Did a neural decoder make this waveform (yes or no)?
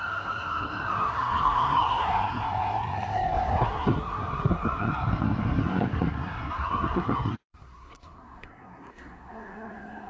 yes